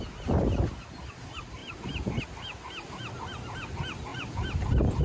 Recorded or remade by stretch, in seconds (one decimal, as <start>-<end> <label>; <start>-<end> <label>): 0.0-1.6 recorded; 1.6-2.2 remade; 2.2-5.0 recorded